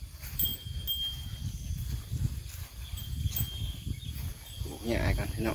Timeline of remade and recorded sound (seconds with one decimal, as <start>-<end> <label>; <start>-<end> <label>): 0.0-0.5 remade; 0.5-1.5 recorded; 1.5-4.3 remade; 4.3-5.5 recorded